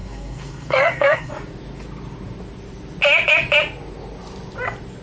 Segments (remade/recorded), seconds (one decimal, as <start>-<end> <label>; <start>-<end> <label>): 0.0-1.3 remade; 1.3-5.0 recorded

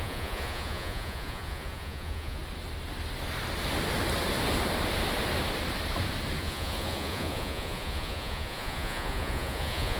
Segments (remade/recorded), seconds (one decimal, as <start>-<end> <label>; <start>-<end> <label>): 0.0-2.4 remade; 2.4-6.4 recorded; 6.4-10.0 remade

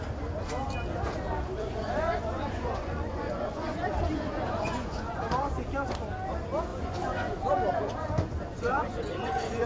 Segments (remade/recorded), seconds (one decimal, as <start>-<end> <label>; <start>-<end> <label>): 0.0-1.6 recorded; 1.6-5.2 remade; 5.2-6.7 recorded; 6.7-9.7 remade

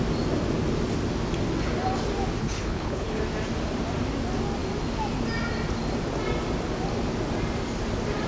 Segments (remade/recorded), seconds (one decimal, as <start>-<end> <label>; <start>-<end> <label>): 0.0-2.4 recorded; 2.4-3.2 remade; 3.2-8.3 recorded

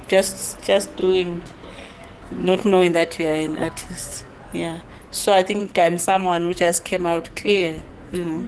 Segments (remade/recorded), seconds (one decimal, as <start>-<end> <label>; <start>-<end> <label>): 0.0-1.0 recorded; 1.0-4.4 remade; 4.4-5.6 recorded; 5.6-8.5 remade

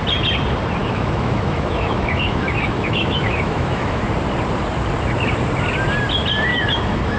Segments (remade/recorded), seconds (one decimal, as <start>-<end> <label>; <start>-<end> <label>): 0.0-0.8 recorded; 0.8-4.0 remade; 4.0-6.5 recorded; 6.5-7.2 remade

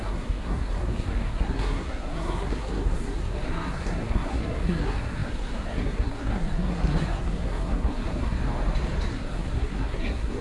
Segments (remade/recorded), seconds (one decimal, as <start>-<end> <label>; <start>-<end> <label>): 0.0-8.4 remade; 8.4-9.1 recorded; 9.1-10.4 remade